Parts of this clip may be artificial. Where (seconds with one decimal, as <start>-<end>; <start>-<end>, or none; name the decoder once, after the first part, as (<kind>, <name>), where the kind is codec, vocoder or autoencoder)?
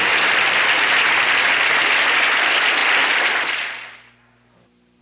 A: none